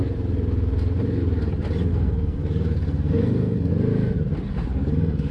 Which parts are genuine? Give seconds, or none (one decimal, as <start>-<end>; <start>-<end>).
0.0-1.9; 3.7-4.6